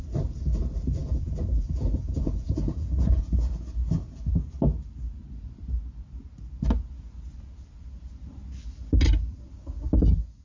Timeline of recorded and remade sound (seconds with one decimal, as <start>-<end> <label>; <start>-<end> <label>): 0.0-1.0 recorded; 1.0-3.2 remade; 3.2-10.4 recorded